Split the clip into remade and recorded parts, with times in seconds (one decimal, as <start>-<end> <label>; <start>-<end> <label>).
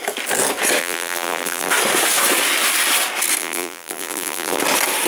0.0-0.8 recorded; 0.8-1.7 remade; 1.7-3.4 recorded; 3.4-4.6 remade; 4.6-5.1 recorded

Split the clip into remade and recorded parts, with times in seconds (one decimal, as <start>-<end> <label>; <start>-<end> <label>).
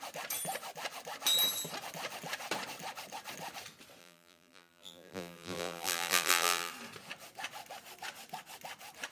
0.0-4.0 recorded; 4.0-6.7 remade; 6.7-9.1 recorded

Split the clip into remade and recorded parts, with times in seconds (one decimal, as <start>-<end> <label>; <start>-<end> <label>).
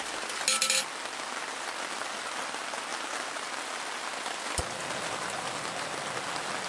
0.0-6.7 recorded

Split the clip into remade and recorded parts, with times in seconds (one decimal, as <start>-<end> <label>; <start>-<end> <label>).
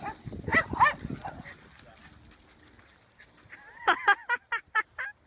0.0-5.3 recorded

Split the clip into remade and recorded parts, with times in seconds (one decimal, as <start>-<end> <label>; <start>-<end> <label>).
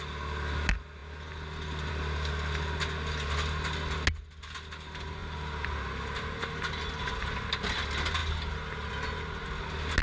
0.0-10.0 recorded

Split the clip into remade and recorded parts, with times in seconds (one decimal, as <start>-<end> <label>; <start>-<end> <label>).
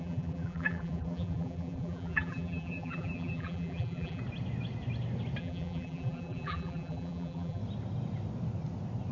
0.0-4.2 remade; 4.2-5.4 recorded; 5.4-7.6 remade; 7.6-9.1 recorded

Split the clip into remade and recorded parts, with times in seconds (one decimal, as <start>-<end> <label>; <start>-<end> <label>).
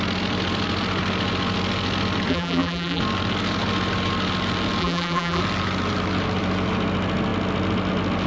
0.0-2.3 recorded; 2.3-3.0 remade; 3.0-4.8 recorded; 4.8-5.4 remade; 5.4-8.3 recorded